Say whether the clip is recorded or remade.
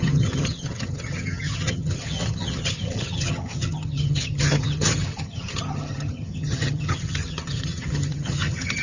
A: remade